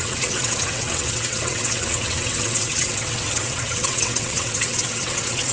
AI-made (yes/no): yes